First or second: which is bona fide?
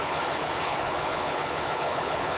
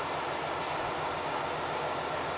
second